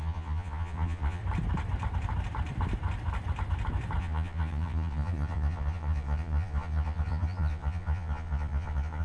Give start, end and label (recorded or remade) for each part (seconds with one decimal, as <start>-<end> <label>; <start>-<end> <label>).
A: 0.0-1.2 remade; 1.2-4.0 recorded; 4.0-9.0 remade

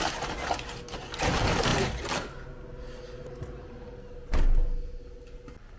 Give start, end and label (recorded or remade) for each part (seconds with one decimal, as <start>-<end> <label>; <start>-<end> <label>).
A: 0.0-5.8 recorded

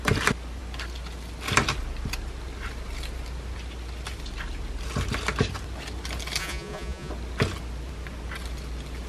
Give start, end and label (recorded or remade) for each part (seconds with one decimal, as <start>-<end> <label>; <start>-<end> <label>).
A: 0.0-6.4 recorded; 6.4-7.1 remade; 7.1-9.1 recorded